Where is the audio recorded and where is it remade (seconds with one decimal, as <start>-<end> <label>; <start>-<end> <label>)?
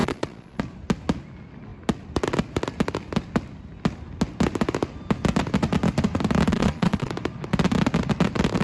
0.0-0.6 remade; 0.6-6.5 recorded; 6.5-7.1 remade; 7.1-8.6 recorded